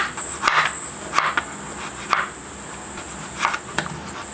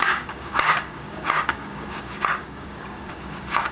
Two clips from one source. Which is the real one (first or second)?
first